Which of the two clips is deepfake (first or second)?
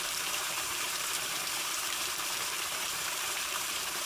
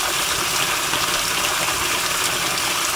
first